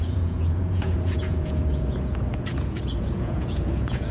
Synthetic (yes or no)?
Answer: yes